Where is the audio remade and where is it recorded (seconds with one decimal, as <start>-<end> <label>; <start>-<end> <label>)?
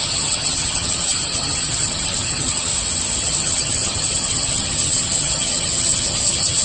0.0-2.7 remade; 2.7-3.2 recorded; 3.2-6.6 remade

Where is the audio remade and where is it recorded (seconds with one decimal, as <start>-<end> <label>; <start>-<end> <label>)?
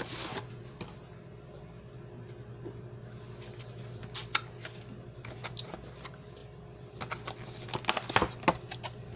0.0-9.2 recorded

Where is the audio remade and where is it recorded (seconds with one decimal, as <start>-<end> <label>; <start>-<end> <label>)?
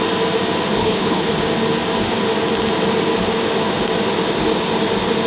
0.0-0.8 recorded; 0.8-1.3 remade; 1.3-5.3 recorded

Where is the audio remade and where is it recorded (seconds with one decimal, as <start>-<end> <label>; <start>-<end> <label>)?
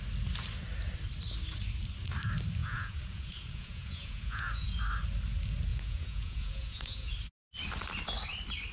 0.0-2.6 recorded; 2.6-4.8 remade; 4.8-5.7 recorded; 5.7-7.1 remade; 7.1-8.7 recorded